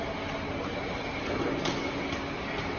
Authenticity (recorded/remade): recorded